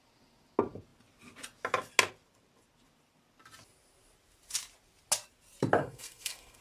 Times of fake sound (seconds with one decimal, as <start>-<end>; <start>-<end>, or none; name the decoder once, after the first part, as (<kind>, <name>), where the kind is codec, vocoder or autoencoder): 5.8-6.6 (codec, SNAC)